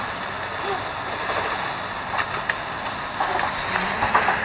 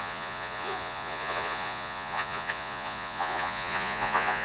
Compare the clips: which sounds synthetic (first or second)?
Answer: second